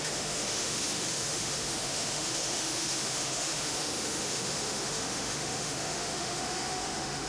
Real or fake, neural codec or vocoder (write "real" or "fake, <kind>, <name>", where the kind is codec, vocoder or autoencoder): fake, autoencoder, DAC-VAE